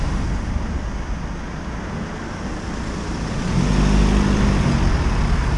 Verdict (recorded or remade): recorded